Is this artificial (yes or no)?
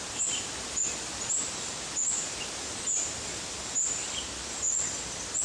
no